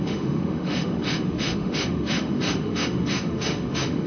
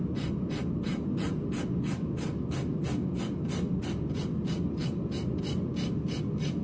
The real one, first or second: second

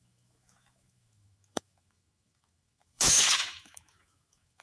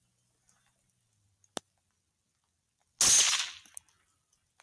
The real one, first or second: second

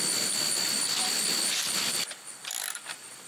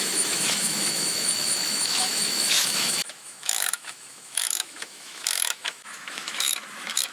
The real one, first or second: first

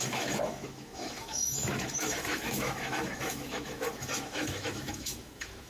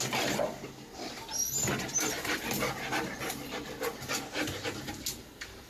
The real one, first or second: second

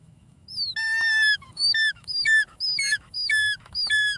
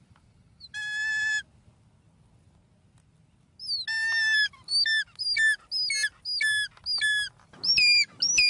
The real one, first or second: second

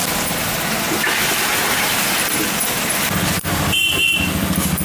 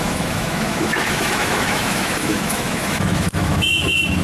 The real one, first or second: first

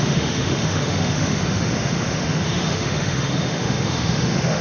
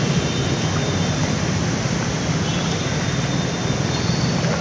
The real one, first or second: second